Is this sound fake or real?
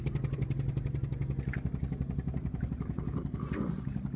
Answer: real